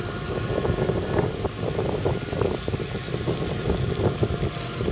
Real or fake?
real